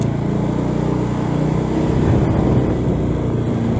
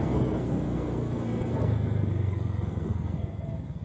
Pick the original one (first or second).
first